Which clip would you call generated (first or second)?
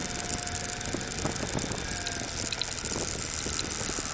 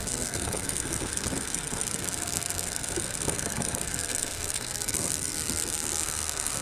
second